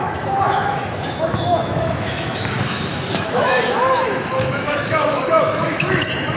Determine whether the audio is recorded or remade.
remade